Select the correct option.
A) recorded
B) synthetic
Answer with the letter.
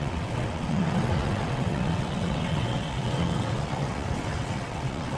B